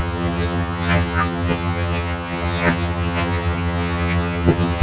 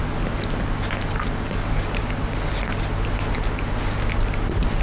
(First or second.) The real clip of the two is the second